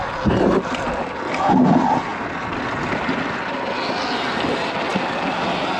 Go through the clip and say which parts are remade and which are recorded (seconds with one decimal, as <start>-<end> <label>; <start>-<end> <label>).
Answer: 0.0-5.8 recorded